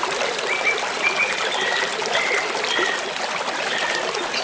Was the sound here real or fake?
real